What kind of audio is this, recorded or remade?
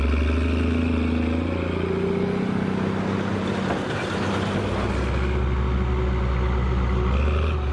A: recorded